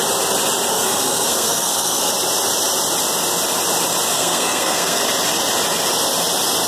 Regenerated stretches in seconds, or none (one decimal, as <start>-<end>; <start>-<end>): 0.7-2.1; 4.1-5.0